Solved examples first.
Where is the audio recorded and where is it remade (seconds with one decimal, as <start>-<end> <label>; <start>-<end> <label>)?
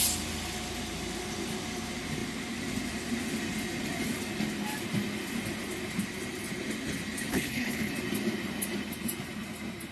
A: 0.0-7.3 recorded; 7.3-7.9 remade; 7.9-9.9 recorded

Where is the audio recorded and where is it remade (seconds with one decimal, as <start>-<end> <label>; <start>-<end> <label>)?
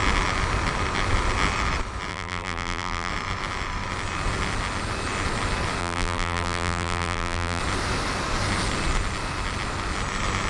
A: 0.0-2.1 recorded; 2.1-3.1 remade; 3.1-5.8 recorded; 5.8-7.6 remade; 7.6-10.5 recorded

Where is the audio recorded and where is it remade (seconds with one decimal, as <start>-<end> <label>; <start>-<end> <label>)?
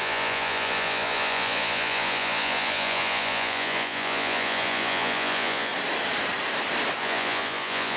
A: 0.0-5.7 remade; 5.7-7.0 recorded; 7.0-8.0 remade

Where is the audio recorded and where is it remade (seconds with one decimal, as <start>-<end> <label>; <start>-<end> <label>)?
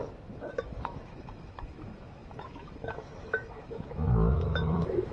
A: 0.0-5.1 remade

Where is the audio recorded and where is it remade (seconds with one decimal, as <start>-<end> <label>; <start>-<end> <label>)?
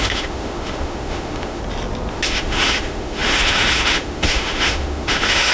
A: 0.0-1.6 remade; 1.6-2.1 recorded; 2.1-5.5 remade